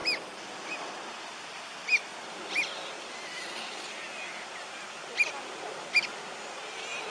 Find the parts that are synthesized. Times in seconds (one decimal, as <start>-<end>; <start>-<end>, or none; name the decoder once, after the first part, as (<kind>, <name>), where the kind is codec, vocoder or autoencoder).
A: none